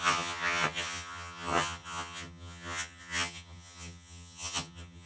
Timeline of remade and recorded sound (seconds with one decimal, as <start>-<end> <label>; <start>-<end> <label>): 0.0-5.1 remade